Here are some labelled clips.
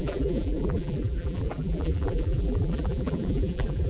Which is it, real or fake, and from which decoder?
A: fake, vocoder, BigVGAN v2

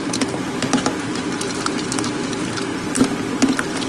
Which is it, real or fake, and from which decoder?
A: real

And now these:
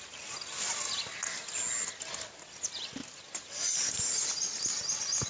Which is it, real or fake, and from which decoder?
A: real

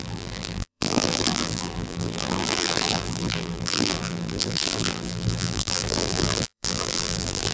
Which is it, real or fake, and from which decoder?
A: fake, vocoder, BigVGAN v2